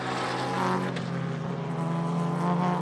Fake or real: real